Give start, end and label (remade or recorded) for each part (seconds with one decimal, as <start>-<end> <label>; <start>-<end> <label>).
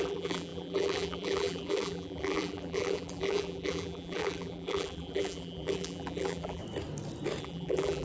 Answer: 0.0-6.6 remade; 6.6-7.4 recorded; 7.4-8.0 remade